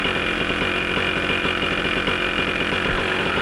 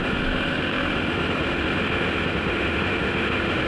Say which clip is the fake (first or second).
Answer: second